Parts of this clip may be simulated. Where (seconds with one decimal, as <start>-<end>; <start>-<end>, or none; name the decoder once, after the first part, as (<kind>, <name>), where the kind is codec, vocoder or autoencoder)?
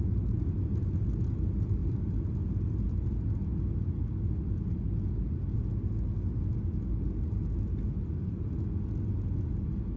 none